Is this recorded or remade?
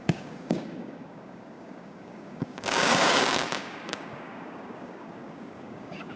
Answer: remade